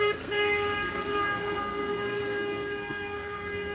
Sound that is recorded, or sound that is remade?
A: remade